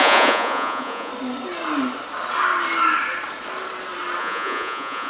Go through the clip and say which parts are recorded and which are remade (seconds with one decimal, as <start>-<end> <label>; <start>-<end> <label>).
0.0-1.1 remade; 1.1-4.2 recorded; 4.2-5.1 remade